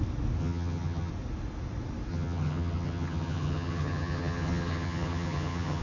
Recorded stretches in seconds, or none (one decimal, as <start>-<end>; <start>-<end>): 0.0-0.4; 1.1-2.1